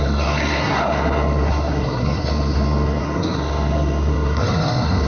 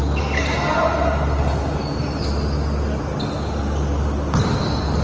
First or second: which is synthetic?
first